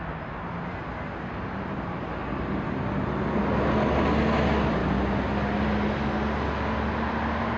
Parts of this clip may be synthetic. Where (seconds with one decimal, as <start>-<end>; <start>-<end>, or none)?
none